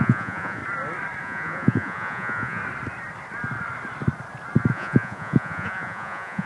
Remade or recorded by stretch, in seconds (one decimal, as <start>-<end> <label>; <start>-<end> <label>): 0.0-0.6 remade; 0.6-1.2 recorded; 1.2-2.6 remade; 2.6-4.7 recorded; 4.7-6.5 remade